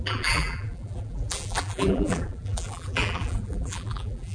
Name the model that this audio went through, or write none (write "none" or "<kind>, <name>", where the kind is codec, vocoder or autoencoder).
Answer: vocoder, BigVGAN v2